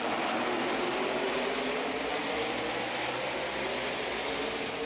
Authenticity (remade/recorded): recorded